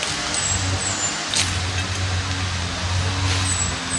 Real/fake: real